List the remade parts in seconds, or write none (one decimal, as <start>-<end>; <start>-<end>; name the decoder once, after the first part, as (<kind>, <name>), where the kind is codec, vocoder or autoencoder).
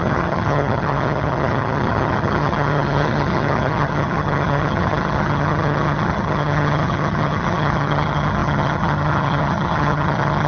0.0-10.5 (vocoder, HiFi-GAN)